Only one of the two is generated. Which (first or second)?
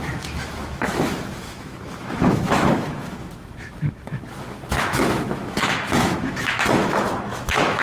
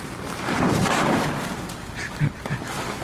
first